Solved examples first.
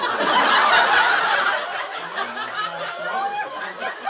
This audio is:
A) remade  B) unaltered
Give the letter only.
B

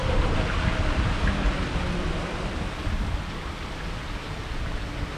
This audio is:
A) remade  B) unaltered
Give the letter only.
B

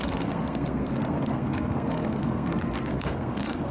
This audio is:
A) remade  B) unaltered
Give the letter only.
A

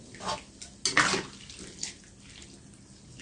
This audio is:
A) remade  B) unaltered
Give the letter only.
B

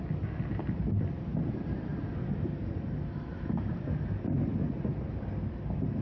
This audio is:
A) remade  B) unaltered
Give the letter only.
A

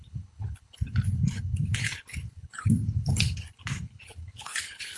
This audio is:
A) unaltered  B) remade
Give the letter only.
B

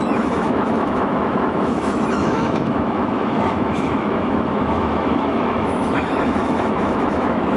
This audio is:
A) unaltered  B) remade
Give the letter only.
B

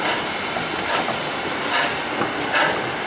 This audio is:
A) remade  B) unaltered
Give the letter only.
B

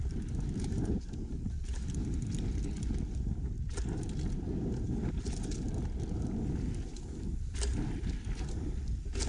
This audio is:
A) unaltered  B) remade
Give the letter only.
A